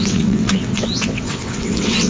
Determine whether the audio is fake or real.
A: fake